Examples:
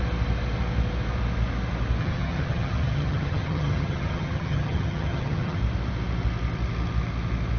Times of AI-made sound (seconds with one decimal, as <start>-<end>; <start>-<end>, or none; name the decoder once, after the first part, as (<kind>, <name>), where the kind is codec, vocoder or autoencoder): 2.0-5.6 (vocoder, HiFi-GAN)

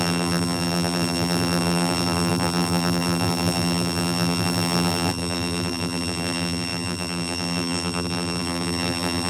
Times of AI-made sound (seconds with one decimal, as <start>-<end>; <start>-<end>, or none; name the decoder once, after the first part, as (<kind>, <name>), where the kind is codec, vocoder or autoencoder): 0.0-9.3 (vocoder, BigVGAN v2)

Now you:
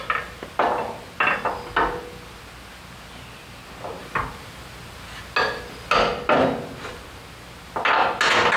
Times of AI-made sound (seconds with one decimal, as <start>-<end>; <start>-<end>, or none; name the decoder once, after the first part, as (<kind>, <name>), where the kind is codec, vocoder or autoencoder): none